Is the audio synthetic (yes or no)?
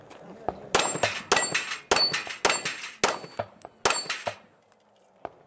no